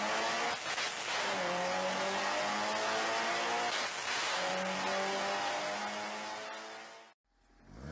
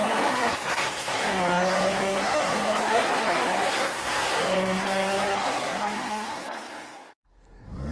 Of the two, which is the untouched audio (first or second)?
first